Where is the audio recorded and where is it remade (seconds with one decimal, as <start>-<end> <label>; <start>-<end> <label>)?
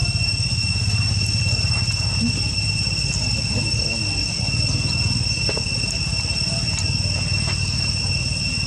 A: 0.0-8.7 recorded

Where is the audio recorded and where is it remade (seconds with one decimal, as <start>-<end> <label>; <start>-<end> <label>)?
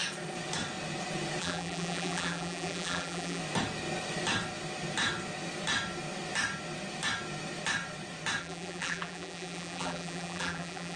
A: 0.0-1.4 recorded; 1.4-3.4 remade; 3.4-8.4 recorded; 8.4-11.0 remade